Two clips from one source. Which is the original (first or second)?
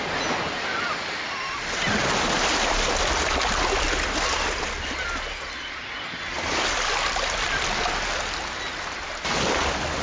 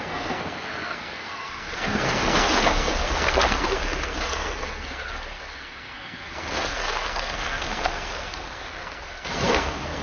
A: first